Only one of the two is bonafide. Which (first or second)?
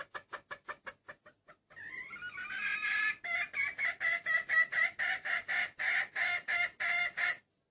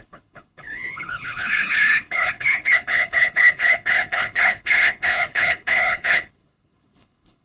first